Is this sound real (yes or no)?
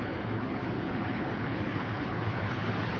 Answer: no